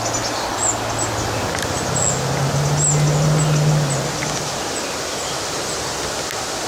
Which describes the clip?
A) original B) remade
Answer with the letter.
A